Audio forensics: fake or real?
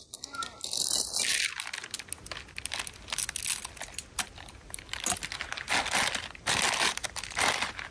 real